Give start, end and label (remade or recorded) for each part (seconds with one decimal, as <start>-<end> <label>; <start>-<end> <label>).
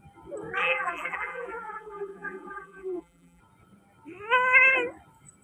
0.0-0.6 recorded; 0.6-3.4 remade; 3.4-5.4 recorded